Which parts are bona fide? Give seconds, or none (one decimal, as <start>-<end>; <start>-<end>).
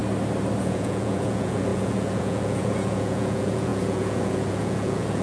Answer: 0.0-0.6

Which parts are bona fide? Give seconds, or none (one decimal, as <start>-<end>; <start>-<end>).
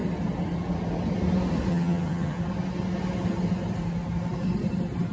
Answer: 0.0-1.7; 2.4-5.1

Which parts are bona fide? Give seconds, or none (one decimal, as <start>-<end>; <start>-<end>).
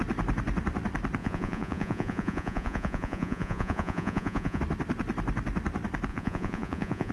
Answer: 0.0-1.2; 4.6-6.1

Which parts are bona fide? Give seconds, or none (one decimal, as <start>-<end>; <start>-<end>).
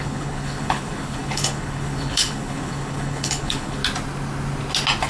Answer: 3.8-5.1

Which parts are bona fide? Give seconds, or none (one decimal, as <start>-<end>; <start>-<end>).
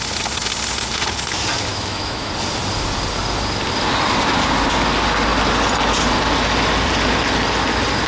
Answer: 0.0-1.7; 2.3-8.1